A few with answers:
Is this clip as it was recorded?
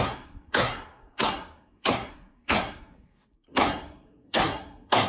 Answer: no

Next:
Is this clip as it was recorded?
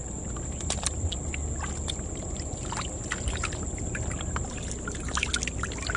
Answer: yes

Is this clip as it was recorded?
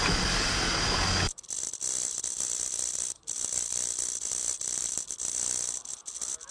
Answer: yes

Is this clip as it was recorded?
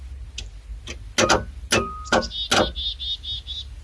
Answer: yes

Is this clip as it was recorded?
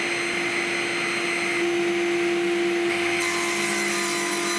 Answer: yes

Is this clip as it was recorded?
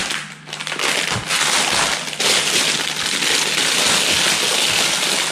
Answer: yes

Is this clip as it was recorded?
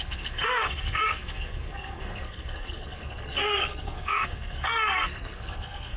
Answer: no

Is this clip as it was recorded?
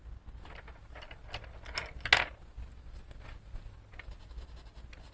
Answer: yes